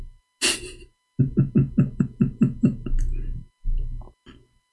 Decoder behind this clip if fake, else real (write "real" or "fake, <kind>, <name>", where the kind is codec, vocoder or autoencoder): real